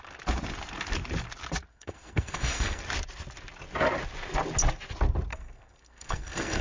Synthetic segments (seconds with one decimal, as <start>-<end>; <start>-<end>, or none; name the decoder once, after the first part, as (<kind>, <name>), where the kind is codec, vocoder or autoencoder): 1.7-2.8 (codec, SNAC); 5.3-6.6

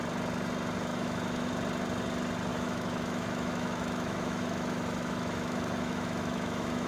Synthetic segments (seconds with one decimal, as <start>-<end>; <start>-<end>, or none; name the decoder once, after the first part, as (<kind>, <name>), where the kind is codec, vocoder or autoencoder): 0.9-1.5 (autoencoder, DAC-VAE); 2.5-6.9

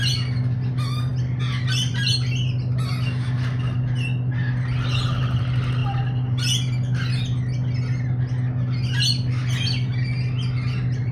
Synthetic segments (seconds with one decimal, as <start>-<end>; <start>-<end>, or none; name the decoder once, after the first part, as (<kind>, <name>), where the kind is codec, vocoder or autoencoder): none